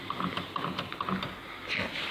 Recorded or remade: recorded